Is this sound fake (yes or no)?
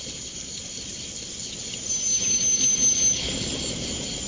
no